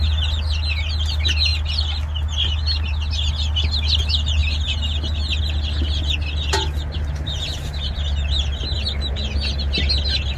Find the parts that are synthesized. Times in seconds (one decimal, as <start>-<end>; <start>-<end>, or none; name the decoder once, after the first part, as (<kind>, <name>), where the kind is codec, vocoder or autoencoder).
none